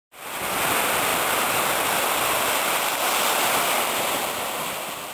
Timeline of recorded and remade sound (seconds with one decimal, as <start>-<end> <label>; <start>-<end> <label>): 0.0-1.1 recorded; 1.1-4.2 remade; 4.2-5.1 recorded